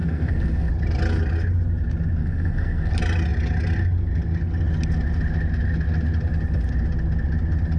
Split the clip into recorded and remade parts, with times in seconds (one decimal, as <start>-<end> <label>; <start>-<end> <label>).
0.0-0.7 remade; 0.7-2.2 recorded; 2.2-2.9 remade; 2.9-7.8 recorded

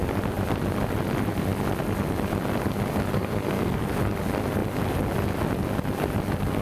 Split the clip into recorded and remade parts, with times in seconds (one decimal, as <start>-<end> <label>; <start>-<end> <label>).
0.0-3.1 recorded; 3.1-3.8 remade; 3.8-6.6 recorded

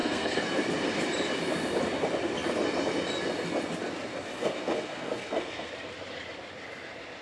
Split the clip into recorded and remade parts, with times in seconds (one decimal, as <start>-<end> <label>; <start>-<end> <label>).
0.0-0.7 remade; 0.7-4.1 recorded; 4.1-5.7 remade; 5.7-7.2 recorded

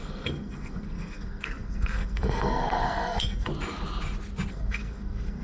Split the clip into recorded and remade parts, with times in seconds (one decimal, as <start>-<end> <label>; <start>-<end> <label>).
0.0-3.5 remade; 3.5-4.5 recorded; 4.5-5.4 remade

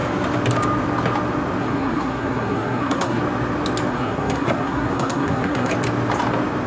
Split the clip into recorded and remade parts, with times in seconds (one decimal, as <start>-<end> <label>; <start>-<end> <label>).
0.0-1.6 recorded; 1.6-3.2 remade; 3.2-3.9 recorded; 3.9-5.7 remade; 5.7-6.7 recorded